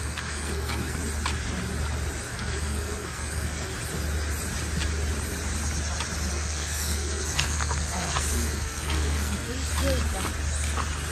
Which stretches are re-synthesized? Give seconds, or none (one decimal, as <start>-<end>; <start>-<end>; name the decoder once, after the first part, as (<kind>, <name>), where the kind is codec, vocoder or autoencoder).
0.0-1.0 (codec, SNAC); 2.3-3.7; 6.3-9.7